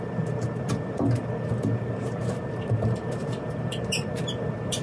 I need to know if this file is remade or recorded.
remade